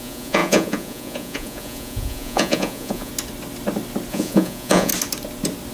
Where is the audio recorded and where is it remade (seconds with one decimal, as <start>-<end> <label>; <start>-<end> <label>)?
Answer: 0.0-3.1 remade; 3.1-4.1 recorded; 4.1-4.9 remade; 4.9-5.7 recorded